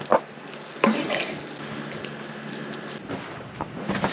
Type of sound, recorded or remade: recorded